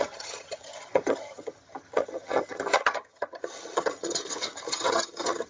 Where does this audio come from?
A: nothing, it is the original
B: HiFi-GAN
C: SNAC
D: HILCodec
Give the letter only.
B